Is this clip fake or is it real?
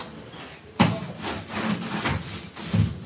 real